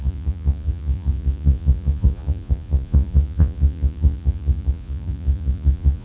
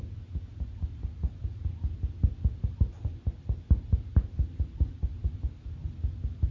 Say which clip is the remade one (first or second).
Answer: first